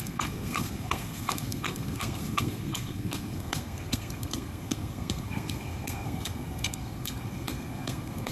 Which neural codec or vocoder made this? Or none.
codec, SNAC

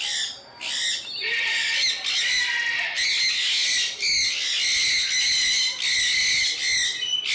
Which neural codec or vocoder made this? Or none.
none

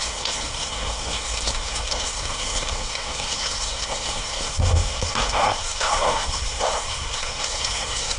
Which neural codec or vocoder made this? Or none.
codec, SNAC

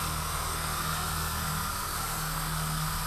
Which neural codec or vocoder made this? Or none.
codec, SNAC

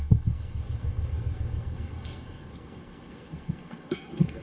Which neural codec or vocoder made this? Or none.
codec, SNAC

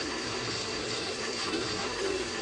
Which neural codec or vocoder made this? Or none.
codec, SNAC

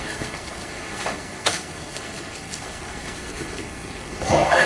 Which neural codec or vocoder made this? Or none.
codec, SNAC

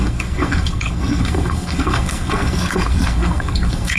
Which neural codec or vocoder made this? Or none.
codec, SNAC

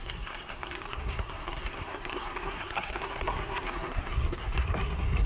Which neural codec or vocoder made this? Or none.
codec, SNAC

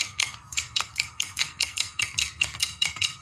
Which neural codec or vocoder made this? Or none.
codec, SNAC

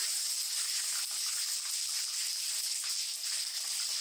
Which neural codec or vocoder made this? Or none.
none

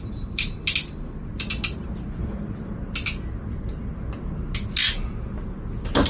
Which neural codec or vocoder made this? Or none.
none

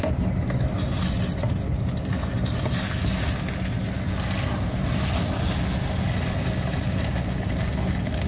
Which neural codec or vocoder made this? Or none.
none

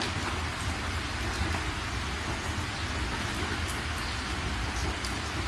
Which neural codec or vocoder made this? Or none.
none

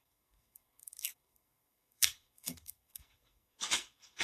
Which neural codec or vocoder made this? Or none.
codec, SNAC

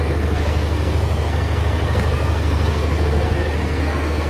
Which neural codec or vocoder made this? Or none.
codec, SNAC